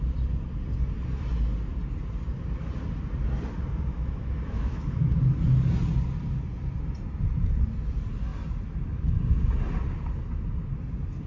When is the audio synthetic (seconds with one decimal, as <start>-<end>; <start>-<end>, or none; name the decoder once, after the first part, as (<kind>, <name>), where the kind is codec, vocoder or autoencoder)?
3.9-5.2 (autoencoder, DAC-VAE)